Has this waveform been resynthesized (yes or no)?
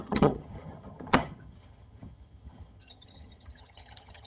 yes